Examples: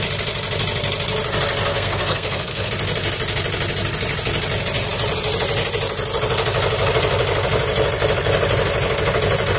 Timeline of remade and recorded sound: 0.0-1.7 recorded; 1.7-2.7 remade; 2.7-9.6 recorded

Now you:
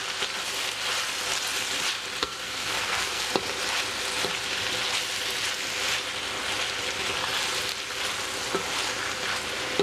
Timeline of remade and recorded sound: 0.0-2.2 recorded; 2.2-3.3 remade; 3.3-9.8 recorded

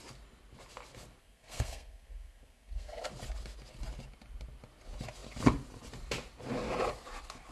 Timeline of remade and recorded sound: 0.0-1.2 recorded; 1.2-3.1 remade; 3.1-7.5 recorded

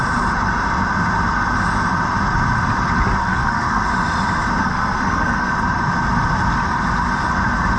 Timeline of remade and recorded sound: 0.0-3.2 recorded; 3.2-3.9 remade; 3.9-4.6 recorded; 4.6-5.5 remade; 5.5-7.8 recorded

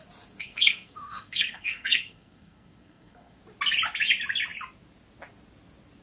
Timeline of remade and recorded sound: 0.0-0.4 recorded; 0.4-3.4 remade; 3.4-6.0 recorded